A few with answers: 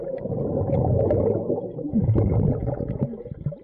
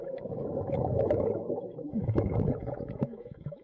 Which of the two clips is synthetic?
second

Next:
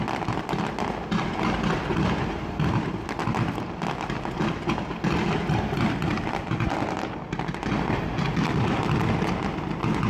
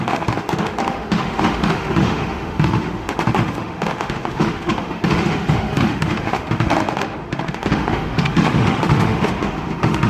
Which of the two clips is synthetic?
second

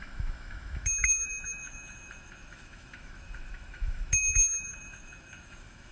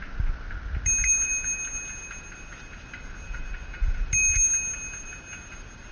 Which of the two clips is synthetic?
first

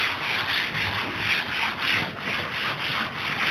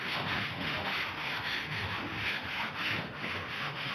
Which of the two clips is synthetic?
second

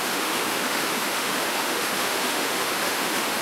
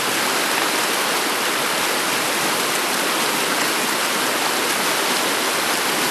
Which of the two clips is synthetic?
first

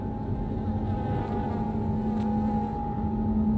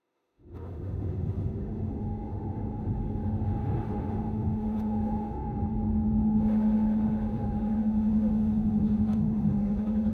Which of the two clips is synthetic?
second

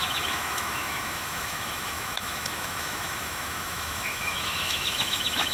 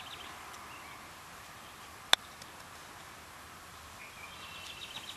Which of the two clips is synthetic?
first